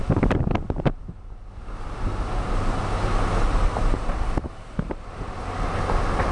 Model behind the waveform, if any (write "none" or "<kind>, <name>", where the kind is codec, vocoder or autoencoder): none